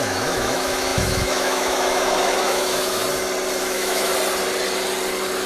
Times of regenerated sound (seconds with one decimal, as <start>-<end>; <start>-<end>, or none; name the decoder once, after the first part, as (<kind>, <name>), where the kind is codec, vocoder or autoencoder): 0.0-3.0 (autoencoder, DAC-VAE); 3.6-4.1